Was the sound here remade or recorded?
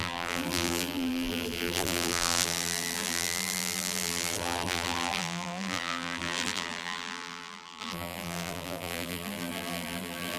remade